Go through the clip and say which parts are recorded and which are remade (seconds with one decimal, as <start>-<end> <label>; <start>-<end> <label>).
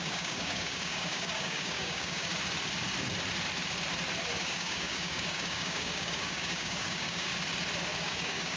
0.0-2.3 remade; 2.3-4.4 recorded; 4.4-7.3 remade; 7.3-8.0 recorded; 8.0-8.6 remade